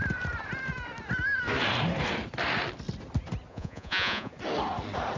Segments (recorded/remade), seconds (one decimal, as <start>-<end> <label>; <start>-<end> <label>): 0.0-3.5 recorded; 3.5-4.3 remade; 4.3-5.2 recorded